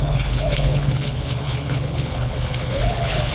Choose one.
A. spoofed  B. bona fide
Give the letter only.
A